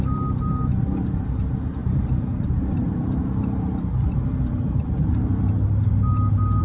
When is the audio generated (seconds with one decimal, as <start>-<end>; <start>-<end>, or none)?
0.0-5.3